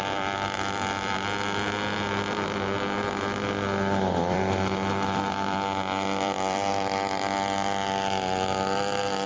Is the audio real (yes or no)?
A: no